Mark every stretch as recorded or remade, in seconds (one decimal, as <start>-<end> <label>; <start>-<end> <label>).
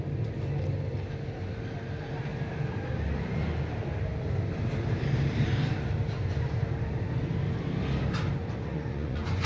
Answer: 0.0-8.4 recorded; 8.4-9.5 remade